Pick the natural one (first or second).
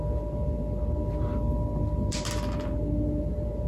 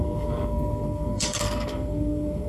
first